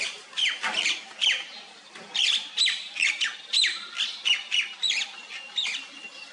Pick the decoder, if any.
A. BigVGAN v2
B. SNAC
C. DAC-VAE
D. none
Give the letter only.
A